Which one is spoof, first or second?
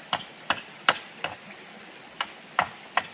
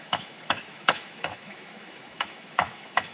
second